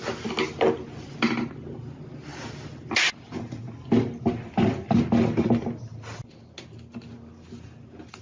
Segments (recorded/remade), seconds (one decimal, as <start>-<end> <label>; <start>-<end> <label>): 0.0-8.2 recorded